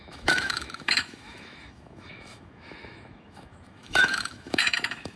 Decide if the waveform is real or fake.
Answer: fake